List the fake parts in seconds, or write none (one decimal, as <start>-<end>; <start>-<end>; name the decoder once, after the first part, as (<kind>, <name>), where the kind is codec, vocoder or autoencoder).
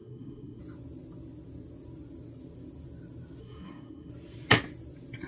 0.0-0.6 (codec, SNAC); 3.4-4.1